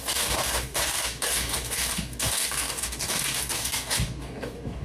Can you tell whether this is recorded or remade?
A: remade